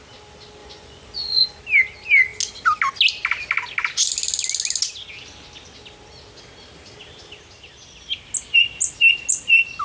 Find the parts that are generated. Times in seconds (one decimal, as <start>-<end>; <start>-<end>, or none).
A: 0.6-1.6